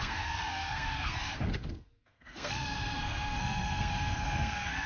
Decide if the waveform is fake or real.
fake